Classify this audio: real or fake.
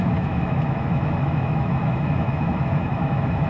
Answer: fake